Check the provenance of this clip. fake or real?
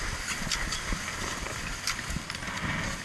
real